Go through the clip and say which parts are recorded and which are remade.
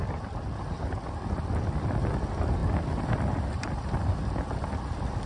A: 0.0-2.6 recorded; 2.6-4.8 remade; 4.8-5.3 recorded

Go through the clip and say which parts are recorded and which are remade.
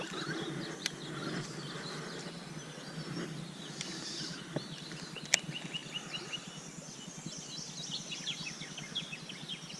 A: 0.0-9.8 recorded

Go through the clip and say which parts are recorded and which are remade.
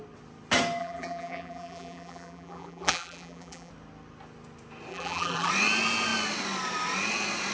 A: 0.0-0.8 recorded; 0.8-3.7 remade; 3.7-4.9 recorded; 4.9-5.5 remade; 5.5-7.5 recorded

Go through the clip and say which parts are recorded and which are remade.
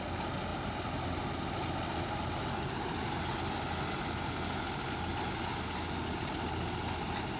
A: 0.0-7.4 recorded